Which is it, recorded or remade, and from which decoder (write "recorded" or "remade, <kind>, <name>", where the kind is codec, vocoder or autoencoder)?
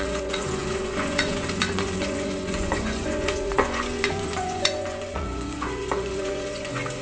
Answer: remade, vocoder, Vocos